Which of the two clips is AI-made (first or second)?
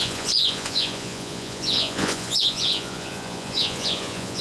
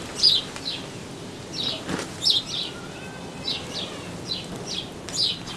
first